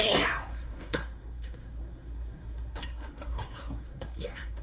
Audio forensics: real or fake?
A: fake